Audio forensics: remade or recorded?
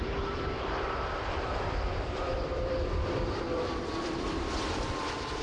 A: remade